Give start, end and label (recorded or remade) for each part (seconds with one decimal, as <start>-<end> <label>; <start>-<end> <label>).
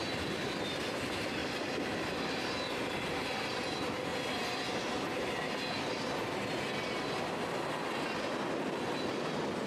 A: 0.0-1.4 recorded; 1.4-2.4 remade; 2.4-9.7 recorded